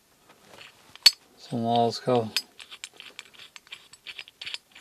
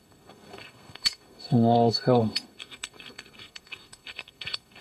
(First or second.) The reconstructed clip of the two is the second